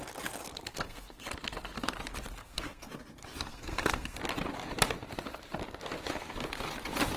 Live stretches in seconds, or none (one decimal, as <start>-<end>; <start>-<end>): 0.0-0.7; 1.2-2.4; 2.9-3.5; 4.2-7.2